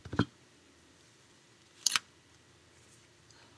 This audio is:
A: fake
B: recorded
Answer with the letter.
A